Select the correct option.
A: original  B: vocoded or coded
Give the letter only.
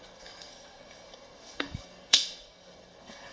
B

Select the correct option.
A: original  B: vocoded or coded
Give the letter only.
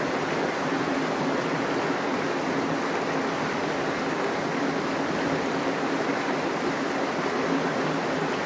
A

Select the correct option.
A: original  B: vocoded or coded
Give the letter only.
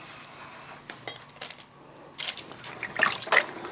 A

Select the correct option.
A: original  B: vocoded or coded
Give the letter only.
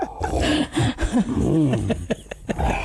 A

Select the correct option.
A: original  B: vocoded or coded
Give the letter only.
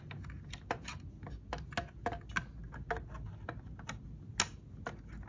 A